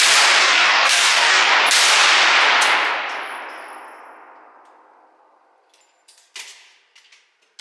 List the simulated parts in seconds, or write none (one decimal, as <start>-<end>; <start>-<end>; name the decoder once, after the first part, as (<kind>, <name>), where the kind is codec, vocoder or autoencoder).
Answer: 0.4-1.5 (codec, DAC)